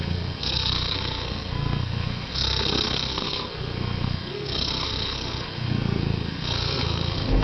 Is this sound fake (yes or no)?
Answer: yes